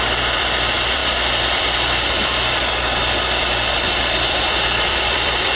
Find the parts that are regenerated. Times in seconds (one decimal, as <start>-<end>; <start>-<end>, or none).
0.0-5.6